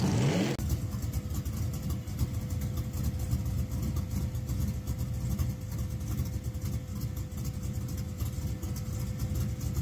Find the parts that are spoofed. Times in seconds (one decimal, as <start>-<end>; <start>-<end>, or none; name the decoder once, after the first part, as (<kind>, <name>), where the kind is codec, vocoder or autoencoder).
1.7-2.4 (vocoder, BigVGAN v2)